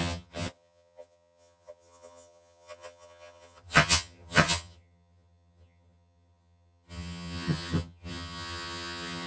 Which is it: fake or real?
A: fake